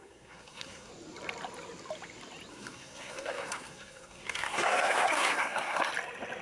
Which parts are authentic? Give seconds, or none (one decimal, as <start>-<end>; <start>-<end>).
0.9-2.5; 5.9-6.4